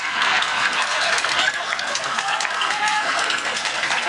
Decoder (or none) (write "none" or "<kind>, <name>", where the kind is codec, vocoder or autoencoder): codec, SNAC